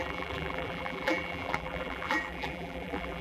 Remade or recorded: remade